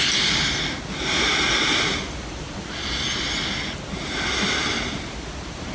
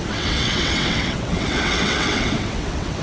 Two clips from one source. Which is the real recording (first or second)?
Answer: first